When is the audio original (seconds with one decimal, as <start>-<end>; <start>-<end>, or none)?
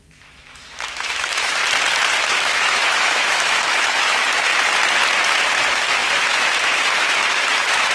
1.6-2.2; 4.5-5.5